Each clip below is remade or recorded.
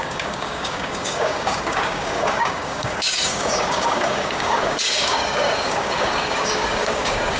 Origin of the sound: remade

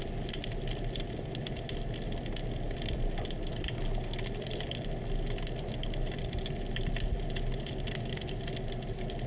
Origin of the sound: recorded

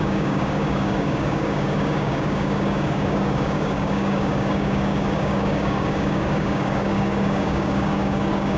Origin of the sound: remade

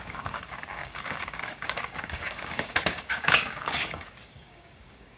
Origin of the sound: remade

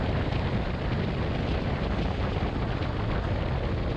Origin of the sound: recorded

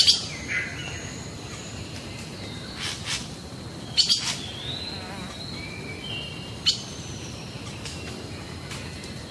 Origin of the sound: recorded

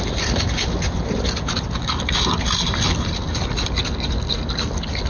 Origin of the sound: recorded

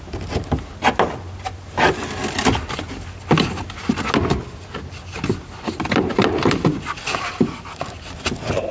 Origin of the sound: recorded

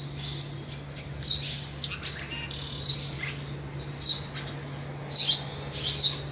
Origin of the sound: recorded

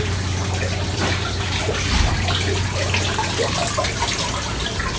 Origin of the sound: recorded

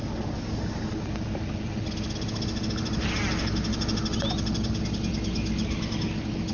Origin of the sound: recorded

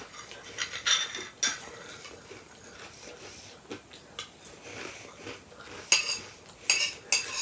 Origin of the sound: recorded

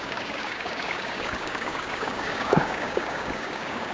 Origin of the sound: remade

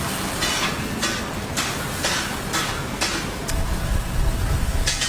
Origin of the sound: recorded